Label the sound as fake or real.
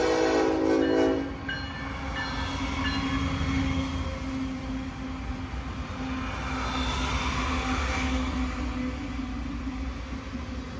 real